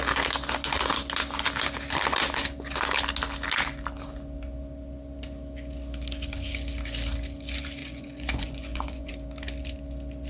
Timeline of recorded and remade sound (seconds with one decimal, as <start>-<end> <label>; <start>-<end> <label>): 0.0-7.8 recorded; 7.8-9.1 remade; 9.1-10.3 recorded